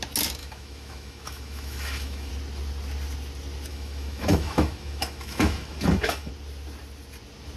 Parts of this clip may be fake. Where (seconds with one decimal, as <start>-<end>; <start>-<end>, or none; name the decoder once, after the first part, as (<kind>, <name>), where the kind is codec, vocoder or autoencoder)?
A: 0.4-2.3 (autoencoder, DAC-VAE); 3.7-6.3